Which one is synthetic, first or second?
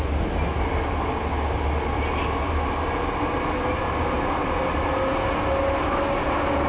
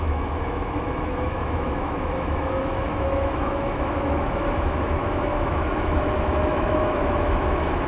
second